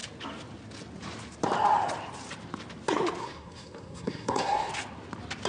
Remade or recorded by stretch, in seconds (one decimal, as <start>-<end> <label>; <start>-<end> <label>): 0.0-3.2 recorded; 3.2-4.7 remade; 4.7-5.5 recorded